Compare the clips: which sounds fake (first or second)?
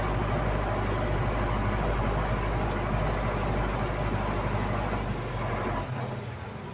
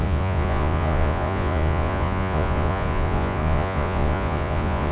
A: second